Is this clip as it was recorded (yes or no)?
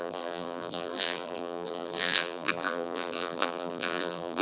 no